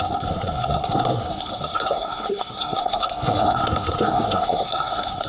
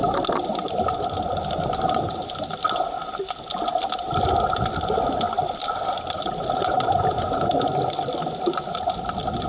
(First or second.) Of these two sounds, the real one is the second